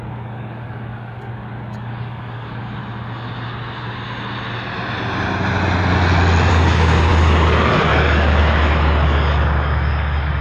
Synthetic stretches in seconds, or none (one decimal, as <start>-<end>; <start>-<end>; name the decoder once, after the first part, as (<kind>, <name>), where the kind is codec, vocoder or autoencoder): 0.0-2.8 (codec, DAC); 6.5-10.4